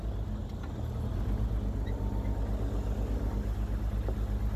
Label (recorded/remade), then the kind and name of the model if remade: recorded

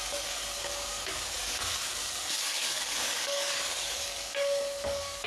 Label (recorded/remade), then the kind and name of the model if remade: remade, codec, DAC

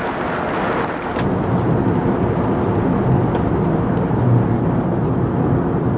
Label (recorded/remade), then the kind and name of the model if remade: recorded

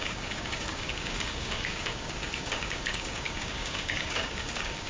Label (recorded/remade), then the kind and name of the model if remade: remade, codec, DAC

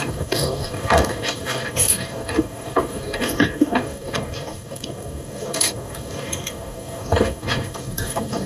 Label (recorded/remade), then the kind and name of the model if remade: remade, codec, DAC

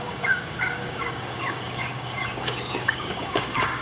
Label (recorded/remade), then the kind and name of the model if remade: remade, codec, DAC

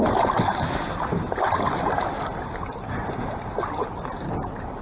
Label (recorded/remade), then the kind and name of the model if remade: recorded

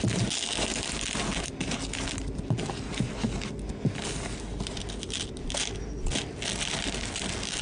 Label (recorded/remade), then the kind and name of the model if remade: recorded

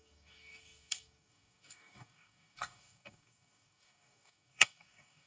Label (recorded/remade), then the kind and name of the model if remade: remade, codec, DAC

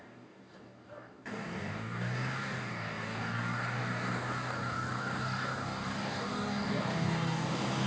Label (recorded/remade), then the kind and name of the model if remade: remade, codec, DAC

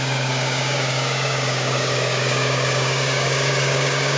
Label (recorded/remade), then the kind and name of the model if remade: remade, codec, DAC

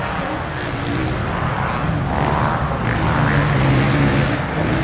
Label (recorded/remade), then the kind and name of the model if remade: recorded